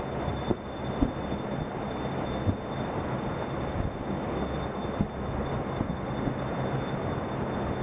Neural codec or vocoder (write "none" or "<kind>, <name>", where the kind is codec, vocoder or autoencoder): none